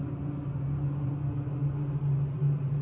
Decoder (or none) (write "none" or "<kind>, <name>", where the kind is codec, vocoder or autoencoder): none